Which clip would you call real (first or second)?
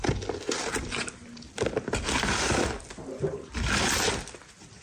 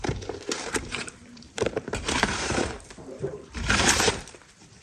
first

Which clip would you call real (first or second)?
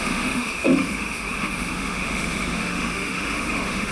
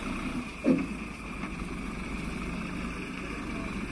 second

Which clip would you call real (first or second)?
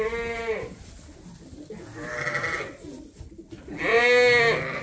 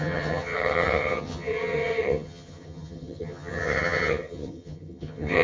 first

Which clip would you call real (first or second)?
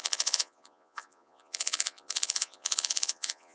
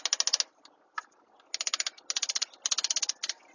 second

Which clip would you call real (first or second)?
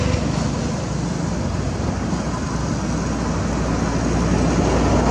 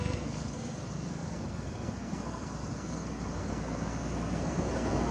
first